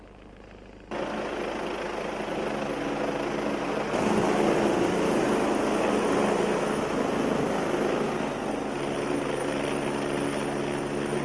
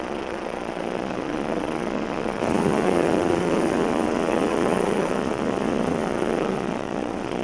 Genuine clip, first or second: first